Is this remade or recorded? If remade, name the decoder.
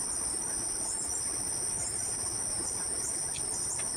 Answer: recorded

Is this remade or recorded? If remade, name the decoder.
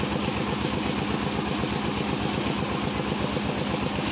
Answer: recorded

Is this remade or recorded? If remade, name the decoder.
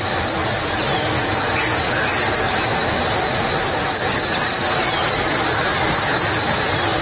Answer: recorded